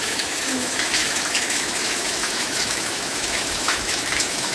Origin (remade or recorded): remade